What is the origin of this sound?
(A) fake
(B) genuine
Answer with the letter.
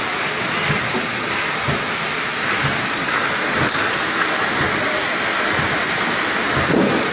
B